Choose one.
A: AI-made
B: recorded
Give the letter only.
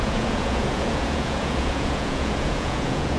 A